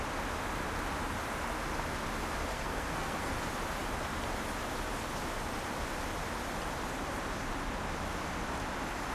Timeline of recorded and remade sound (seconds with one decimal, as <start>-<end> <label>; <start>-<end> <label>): 0.0-2.5 recorded; 2.5-3.3 remade; 3.3-9.1 recorded